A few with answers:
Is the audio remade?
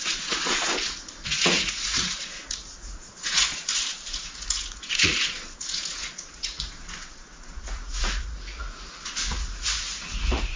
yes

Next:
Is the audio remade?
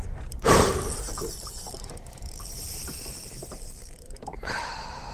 yes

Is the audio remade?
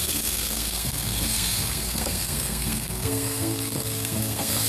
yes